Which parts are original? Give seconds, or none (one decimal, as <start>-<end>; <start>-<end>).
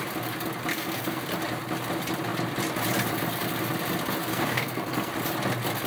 0.0-0.7; 1.2-4.2; 5.1-5.9